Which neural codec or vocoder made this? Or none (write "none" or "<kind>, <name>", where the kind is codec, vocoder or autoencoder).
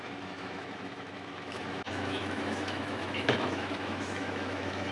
autoencoder, DAC-VAE